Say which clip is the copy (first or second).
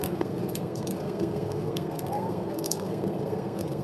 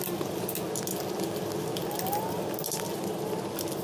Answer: first